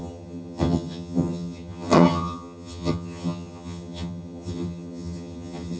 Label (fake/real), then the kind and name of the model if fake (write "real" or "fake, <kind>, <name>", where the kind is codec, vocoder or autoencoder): fake, vocoder, HiFi-GAN